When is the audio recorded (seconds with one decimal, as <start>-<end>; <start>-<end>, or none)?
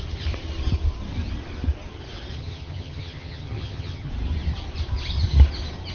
0.0-2.3; 4.1-5.9